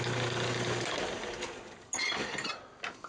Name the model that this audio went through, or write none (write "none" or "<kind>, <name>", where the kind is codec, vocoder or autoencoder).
none